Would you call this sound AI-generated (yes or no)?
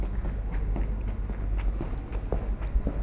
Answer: no